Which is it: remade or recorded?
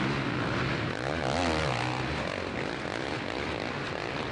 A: recorded